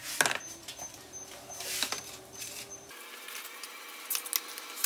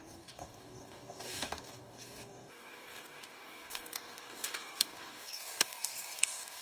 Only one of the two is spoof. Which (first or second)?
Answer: second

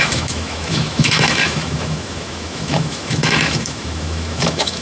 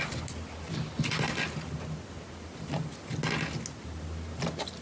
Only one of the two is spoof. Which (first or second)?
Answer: first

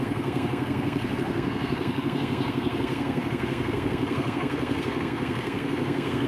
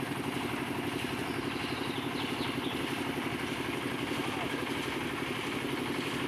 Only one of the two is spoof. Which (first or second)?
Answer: first